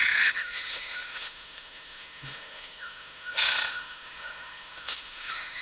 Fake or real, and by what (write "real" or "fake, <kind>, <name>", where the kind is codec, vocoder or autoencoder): fake, autoencoder, DAC-VAE